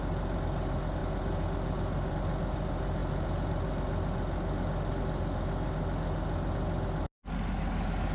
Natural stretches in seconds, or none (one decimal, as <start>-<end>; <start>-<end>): 0.0-8.1